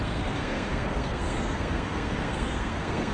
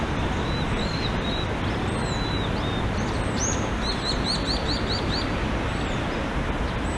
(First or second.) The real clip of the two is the second